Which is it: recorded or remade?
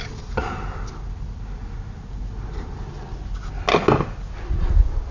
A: recorded